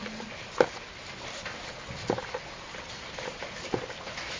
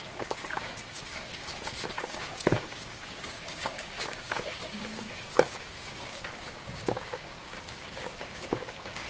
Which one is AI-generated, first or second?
second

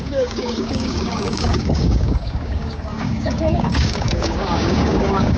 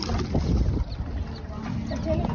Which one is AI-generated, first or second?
first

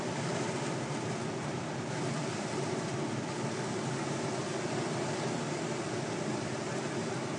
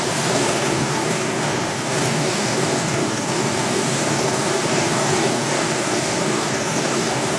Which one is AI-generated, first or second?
second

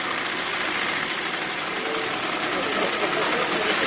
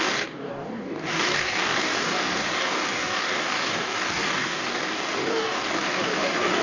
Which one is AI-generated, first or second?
second